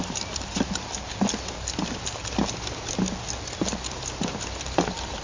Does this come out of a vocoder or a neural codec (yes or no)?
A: no